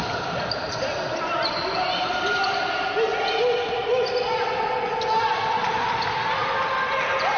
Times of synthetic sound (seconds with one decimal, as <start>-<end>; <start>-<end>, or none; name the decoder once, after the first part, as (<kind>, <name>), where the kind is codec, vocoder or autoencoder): none